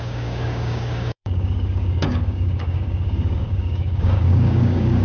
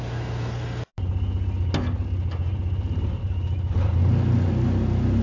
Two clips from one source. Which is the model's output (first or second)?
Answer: first